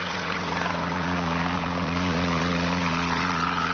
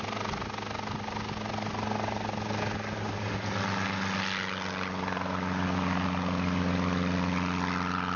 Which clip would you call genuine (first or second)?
second